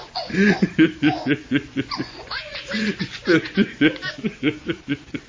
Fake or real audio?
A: fake